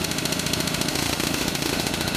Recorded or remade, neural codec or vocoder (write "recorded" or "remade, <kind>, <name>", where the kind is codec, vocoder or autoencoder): remade, autoencoder, DAC-VAE